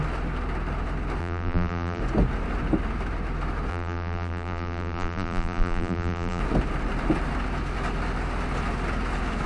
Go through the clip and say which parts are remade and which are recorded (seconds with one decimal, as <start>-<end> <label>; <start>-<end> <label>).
0.0-1.2 recorded; 1.2-2.0 remade; 2.0-3.7 recorded; 3.7-6.4 remade; 6.4-9.5 recorded